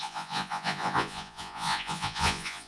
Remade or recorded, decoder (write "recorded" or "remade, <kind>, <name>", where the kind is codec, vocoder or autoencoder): remade, vocoder, Vocos